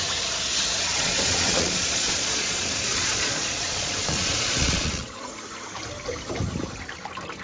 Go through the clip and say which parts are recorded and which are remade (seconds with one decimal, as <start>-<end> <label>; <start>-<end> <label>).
0.0-0.9 recorded; 0.9-5.3 remade; 5.3-7.4 recorded